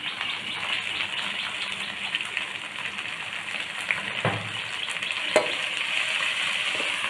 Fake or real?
real